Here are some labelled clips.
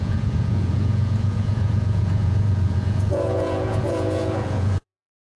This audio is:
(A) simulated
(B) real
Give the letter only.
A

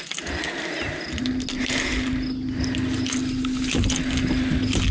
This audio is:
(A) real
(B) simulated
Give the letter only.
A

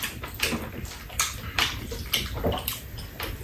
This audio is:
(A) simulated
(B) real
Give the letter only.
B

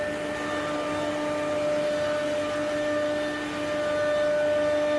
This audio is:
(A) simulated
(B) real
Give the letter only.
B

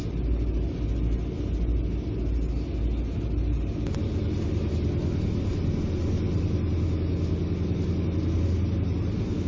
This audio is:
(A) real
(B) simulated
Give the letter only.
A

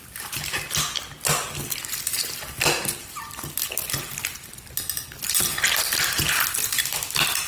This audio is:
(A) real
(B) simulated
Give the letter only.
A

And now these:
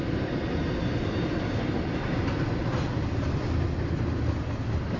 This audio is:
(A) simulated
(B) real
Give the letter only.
B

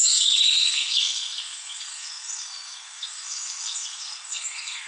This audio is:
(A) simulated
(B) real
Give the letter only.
A